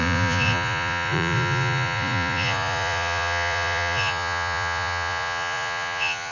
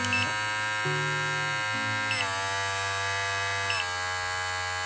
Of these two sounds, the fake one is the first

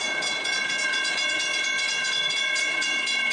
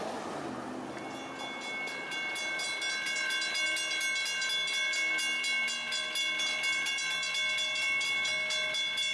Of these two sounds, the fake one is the first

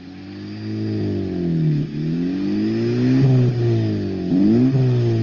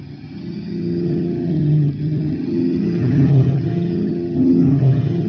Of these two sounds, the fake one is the second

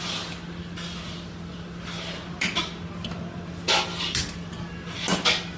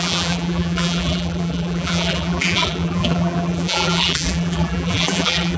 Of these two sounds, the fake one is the second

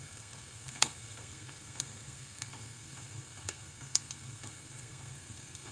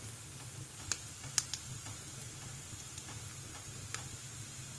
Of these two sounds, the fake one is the first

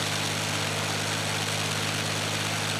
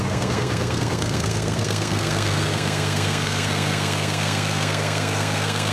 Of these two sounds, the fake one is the second